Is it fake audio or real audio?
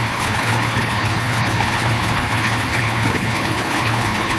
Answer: fake